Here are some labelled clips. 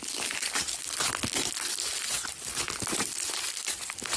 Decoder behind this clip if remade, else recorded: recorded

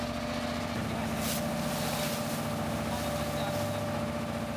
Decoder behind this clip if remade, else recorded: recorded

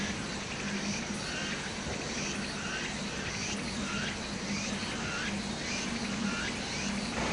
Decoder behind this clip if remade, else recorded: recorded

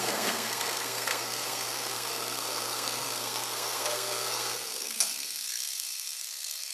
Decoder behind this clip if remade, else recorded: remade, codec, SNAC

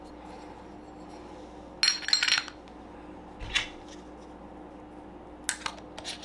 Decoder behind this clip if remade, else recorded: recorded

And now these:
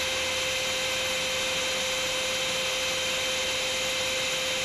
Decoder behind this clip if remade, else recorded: recorded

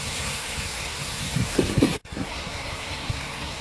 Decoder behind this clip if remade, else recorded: remade, codec, SNAC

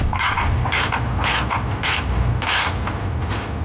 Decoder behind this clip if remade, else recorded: recorded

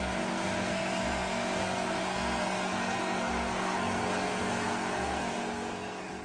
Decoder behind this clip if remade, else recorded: remade, codec, SNAC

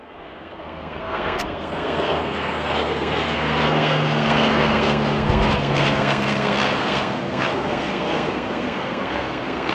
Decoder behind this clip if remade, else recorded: remade, codec, SNAC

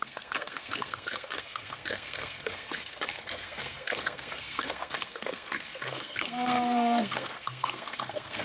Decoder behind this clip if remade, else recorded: remade, codec, SNAC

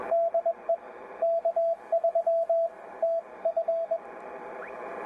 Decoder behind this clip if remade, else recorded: recorded